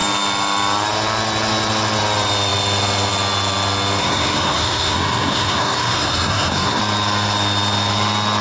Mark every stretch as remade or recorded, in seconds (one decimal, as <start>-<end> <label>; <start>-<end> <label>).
0.0-4.0 recorded; 4.0-6.8 remade; 6.8-8.4 recorded